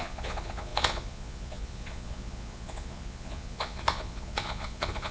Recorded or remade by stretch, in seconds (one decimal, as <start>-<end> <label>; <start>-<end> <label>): 0.0-5.1 remade